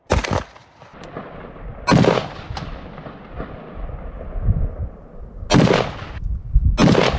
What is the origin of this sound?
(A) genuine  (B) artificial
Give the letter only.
A